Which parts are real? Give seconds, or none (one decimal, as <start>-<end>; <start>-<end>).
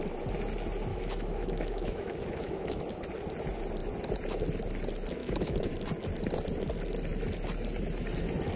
0.0-0.9; 2.8-5.2; 5.7-8.6